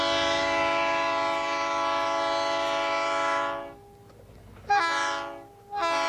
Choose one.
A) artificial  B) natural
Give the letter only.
B